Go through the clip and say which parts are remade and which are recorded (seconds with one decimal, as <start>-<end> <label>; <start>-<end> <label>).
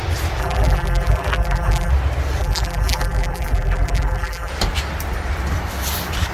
0.0-0.4 recorded; 0.4-1.9 remade; 1.9-2.4 recorded; 2.4-4.5 remade; 4.5-6.3 recorded